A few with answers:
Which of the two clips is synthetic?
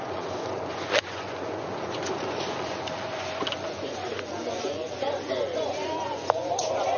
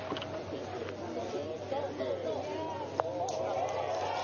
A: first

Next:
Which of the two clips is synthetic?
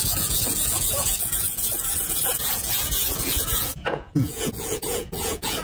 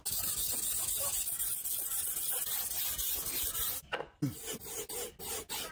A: first